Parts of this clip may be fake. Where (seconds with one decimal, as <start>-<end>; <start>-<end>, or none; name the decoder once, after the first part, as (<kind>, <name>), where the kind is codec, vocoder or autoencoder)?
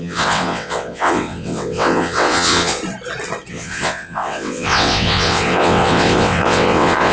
0.0-2.8 (vocoder, WaveNeXt); 3.5-7.1